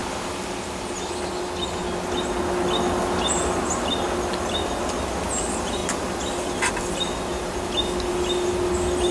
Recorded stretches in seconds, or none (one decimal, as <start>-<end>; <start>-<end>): 0.0-9.1